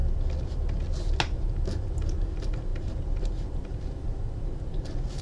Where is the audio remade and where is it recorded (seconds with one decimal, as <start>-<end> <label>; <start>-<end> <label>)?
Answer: 0.0-5.2 recorded